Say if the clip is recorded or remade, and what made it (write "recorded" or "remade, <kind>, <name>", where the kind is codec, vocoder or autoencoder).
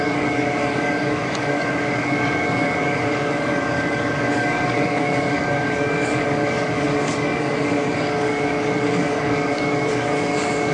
remade, codec, DAC